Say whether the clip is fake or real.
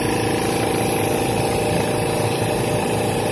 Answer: real